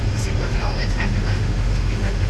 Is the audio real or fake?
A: fake